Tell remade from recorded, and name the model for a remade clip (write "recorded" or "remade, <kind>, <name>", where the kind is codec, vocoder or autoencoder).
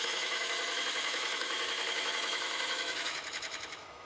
remade, autoencoder, DAC-VAE